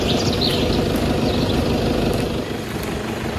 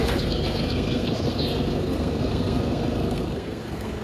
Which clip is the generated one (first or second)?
second